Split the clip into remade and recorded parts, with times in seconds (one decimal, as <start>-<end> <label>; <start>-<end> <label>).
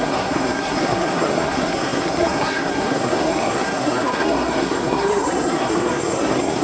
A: 0.0-6.6 remade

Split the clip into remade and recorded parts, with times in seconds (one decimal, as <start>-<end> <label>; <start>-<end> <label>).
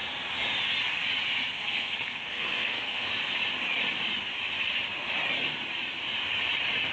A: 0.0-1.5 recorded; 1.5-3.1 remade; 3.1-6.9 recorded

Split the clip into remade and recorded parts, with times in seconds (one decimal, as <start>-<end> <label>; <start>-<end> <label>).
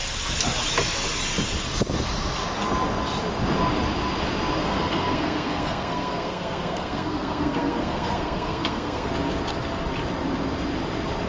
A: 0.0-4.6 recorded; 4.6-9.1 remade; 9.1-11.3 recorded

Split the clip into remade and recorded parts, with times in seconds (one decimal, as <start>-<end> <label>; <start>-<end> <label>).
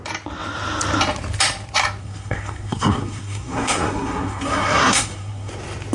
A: 0.0-2.0 recorded; 2.0-5.5 remade; 5.5-5.9 recorded